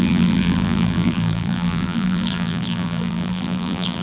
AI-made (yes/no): yes